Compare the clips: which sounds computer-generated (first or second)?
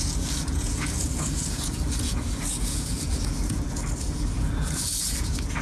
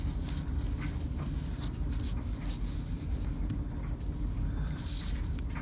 first